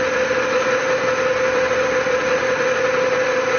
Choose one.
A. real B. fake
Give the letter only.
A